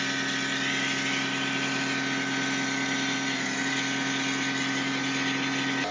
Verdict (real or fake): real